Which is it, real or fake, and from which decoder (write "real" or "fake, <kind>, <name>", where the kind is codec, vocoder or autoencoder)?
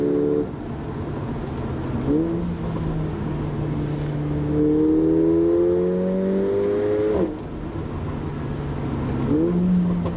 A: real